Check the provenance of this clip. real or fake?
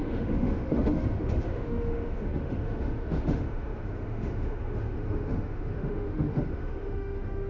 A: fake